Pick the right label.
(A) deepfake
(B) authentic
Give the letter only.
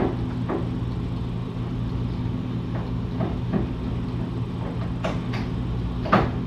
B